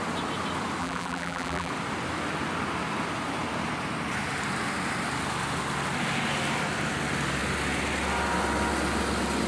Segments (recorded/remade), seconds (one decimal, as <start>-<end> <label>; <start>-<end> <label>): 0.0-0.8 recorded; 0.8-1.7 remade; 1.7-9.5 recorded